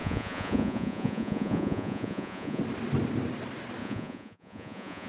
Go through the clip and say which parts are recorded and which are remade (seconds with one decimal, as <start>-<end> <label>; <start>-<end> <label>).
0.0-2.6 remade; 2.6-3.8 recorded; 3.8-5.1 remade